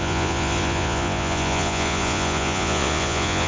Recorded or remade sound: remade